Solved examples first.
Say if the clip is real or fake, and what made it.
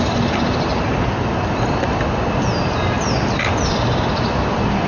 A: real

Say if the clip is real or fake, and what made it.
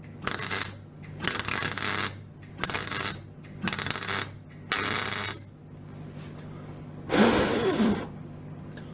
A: real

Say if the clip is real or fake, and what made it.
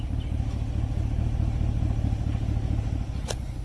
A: real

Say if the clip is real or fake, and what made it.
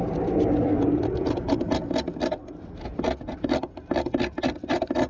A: real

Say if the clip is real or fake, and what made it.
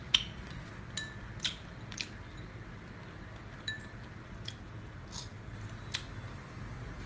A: real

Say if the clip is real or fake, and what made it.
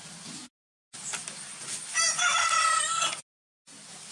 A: real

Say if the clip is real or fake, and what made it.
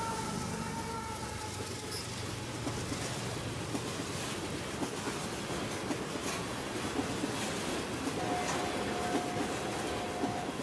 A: real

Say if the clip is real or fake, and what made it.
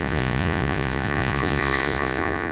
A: fake, vocoder, Vocos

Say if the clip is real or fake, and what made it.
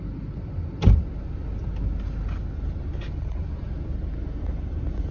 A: real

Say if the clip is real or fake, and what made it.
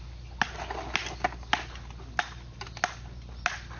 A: real